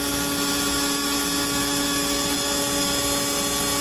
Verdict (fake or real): real